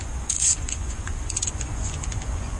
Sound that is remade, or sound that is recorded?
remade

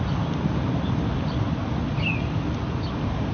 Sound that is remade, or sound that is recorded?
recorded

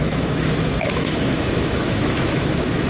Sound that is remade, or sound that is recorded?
remade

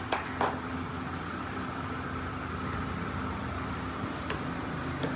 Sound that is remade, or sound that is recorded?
recorded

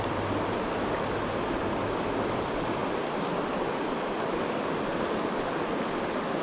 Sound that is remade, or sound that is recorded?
recorded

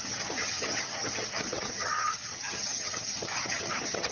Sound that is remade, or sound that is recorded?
remade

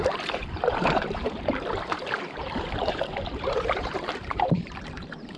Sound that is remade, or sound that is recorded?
remade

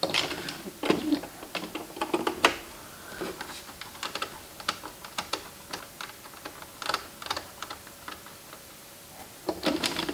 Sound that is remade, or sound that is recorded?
recorded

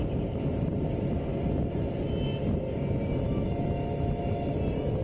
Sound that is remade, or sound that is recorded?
recorded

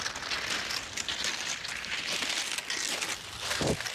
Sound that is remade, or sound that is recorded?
recorded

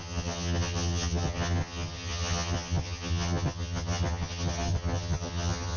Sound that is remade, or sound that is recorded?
remade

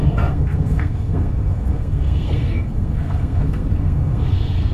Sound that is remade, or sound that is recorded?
remade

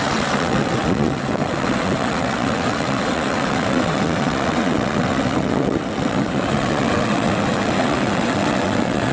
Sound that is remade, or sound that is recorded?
remade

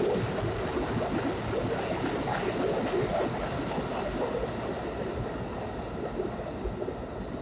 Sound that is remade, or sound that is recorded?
recorded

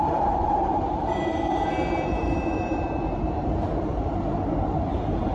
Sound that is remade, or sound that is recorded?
remade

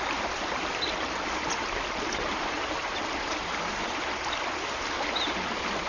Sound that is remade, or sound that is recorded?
recorded